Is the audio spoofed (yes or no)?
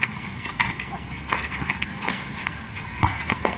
yes